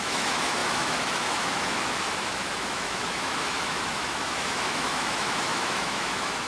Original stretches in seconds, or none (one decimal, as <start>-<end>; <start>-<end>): none